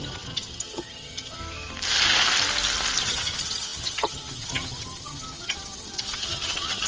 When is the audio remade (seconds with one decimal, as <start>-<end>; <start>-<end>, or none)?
0.0-1.4; 3.0-6.9